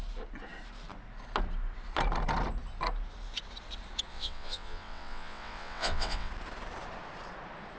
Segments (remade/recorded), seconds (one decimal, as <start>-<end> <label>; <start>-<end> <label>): 0.0-4.1 recorded; 4.1-6.3 remade; 6.3-7.8 recorded

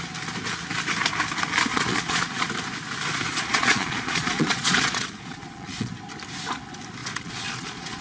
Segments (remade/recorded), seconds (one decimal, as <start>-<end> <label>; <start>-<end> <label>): 0.0-1.7 recorded; 1.7-2.5 remade; 2.5-3.3 recorded; 3.3-5.9 remade; 5.9-7.0 recorded; 7.0-8.0 remade

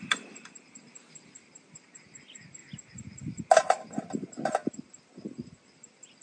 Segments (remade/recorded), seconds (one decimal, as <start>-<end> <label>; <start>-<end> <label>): 0.0-6.2 recorded

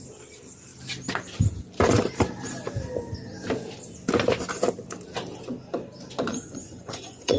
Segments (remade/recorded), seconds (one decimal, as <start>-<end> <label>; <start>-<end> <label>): 0.0-6.3 recorded; 6.3-7.4 remade

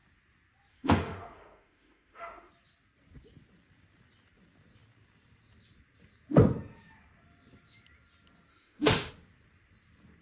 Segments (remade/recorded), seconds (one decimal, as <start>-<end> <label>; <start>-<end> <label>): 0.0-0.7 recorded; 0.7-2.5 remade; 2.5-8.5 recorded; 8.5-9.1 remade; 9.1-10.2 recorded

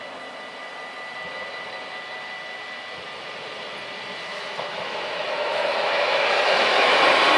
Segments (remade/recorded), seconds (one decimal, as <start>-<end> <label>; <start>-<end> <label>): 0.0-4.3 recorded; 4.3-7.0 remade; 7.0-7.4 recorded